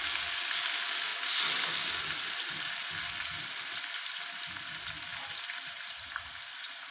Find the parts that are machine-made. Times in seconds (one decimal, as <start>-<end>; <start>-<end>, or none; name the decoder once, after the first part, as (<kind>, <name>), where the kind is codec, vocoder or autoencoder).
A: none

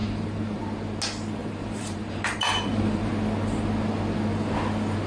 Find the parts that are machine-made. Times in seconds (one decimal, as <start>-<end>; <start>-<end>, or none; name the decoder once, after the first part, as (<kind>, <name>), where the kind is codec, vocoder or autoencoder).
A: 0.0-0.6 (vocoder, BigVGAN v2); 1.4-3.1

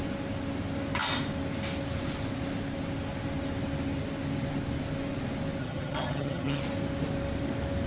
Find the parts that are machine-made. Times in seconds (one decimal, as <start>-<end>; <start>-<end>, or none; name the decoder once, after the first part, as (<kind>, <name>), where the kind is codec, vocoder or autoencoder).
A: 5.6-6.6 (vocoder, HiFi-GAN)

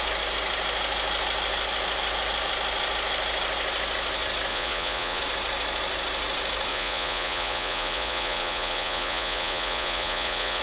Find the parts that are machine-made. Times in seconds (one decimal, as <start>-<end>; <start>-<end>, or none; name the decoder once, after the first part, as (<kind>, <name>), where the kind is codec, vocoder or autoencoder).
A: 4.5-5.2 (vocoder, Vocos); 6.7-10.6

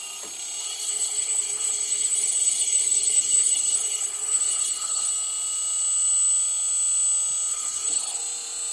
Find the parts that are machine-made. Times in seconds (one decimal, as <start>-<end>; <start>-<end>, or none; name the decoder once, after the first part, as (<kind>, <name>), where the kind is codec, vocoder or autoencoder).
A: 0.6-5.1 (codec, HILCodec); 7.5-8.2

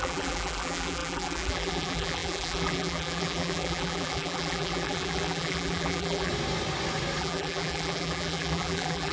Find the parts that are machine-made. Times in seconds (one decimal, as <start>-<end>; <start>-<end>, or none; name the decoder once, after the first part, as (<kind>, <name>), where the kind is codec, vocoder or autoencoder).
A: 0.0-6.3 (vocoder, BigVGAN v2); 7.2-9.1

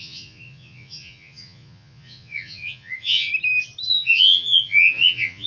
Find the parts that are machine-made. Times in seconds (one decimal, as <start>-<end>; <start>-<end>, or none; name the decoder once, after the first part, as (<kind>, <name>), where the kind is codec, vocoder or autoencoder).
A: 0.0-3.3 (vocoder, Vocos); 3.9-5.5

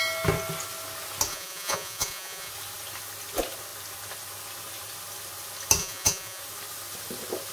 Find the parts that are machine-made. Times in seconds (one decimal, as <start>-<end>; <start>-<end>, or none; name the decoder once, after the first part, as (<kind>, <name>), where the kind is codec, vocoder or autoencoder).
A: 1.3-2.5 (vocoder, Vocos); 5.8-6.4